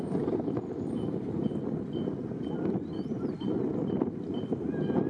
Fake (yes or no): no